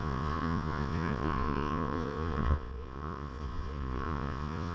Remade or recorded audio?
remade